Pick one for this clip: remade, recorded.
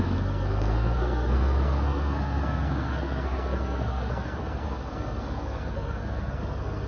remade